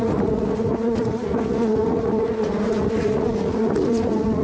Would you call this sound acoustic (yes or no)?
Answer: no